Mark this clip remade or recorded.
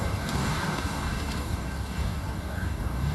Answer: remade